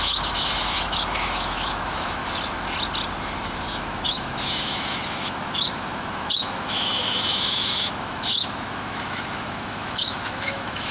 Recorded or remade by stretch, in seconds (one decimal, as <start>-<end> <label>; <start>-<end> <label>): 0.0-2.2 remade; 2.2-3.7 recorded; 3.7-10.9 remade